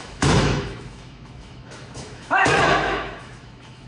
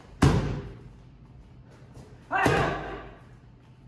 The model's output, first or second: first